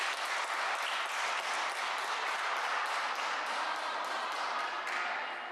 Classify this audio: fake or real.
real